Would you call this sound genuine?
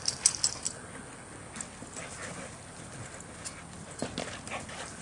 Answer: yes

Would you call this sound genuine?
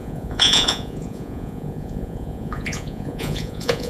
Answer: no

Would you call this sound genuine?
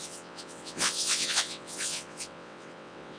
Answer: no